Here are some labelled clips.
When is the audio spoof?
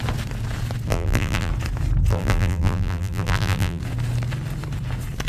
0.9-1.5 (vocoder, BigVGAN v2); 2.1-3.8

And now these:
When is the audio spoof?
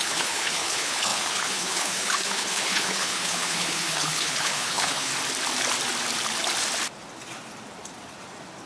0.0-5.1 (codec, HILCodec)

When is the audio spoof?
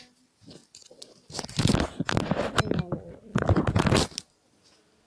none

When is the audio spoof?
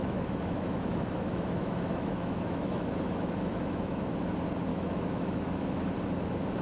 0.0-4.0 (autoencoder, DAC-VAE); 4.7-5.9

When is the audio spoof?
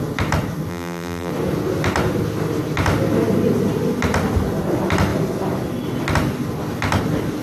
0.7-1.3 (vocoder, BigVGAN v2)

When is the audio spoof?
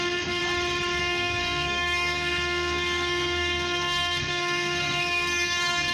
0.0-0.4 (codec, SNAC); 1.0-5.9